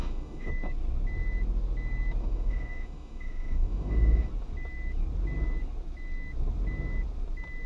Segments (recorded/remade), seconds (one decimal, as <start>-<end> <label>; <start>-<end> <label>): 0.0-0.5 remade; 0.5-2.2 recorded; 2.2-4.3 remade; 4.3-7.7 recorded